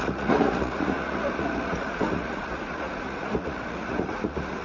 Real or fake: fake